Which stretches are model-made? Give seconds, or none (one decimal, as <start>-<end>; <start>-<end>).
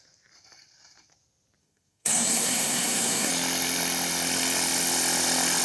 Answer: 1.6-3.3